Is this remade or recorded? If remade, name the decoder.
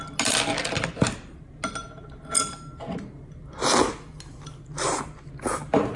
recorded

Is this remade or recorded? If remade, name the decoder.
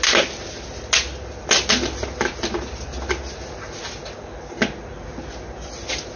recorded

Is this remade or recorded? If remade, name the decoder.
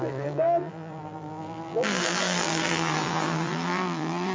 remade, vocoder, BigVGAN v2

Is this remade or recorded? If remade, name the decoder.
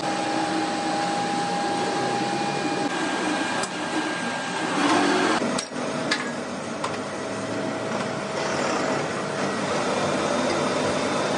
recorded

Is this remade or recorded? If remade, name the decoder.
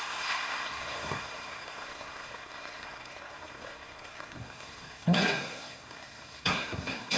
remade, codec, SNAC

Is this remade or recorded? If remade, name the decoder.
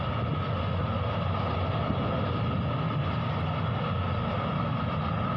recorded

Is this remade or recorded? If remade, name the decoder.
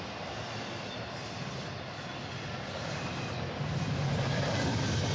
recorded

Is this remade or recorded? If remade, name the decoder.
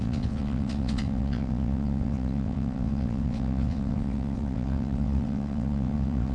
remade, vocoder, WaveNeXt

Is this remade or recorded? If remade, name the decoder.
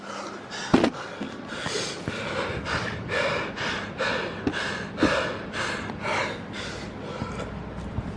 recorded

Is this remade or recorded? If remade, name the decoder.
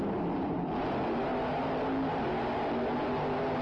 recorded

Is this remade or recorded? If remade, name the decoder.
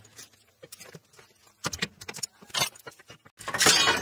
recorded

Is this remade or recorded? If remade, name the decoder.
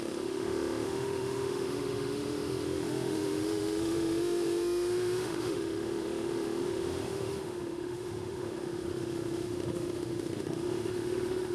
remade, autoencoder, DAC-VAE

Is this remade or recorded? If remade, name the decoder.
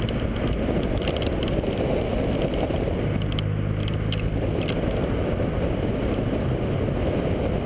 recorded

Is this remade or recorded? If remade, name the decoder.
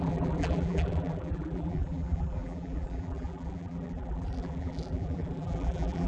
remade, vocoder, BigVGAN v2